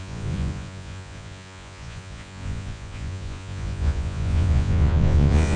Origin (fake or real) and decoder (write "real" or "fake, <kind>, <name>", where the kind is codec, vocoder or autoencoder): fake, vocoder, Vocos